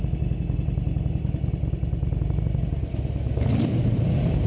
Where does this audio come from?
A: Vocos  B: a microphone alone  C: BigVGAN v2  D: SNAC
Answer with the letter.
B